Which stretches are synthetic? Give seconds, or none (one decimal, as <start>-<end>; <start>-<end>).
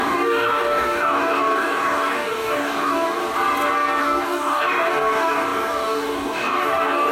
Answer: 0.0-3.2; 4.0-7.1